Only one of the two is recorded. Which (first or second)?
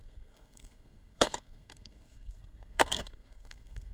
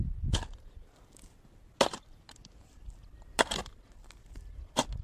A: second